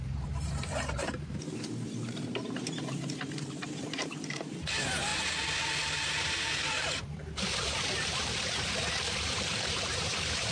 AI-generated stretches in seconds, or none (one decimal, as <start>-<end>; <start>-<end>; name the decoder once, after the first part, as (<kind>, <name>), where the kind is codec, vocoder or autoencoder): 0.0-5.1 (vocoder, BigVGAN v2); 6.4-10.5